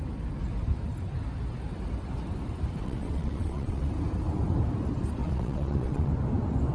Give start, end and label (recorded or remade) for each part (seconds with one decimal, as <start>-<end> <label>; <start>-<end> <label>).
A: 0.0-2.8 recorded; 2.8-3.9 remade; 3.9-5.2 recorded; 5.2-6.1 remade; 6.1-6.7 recorded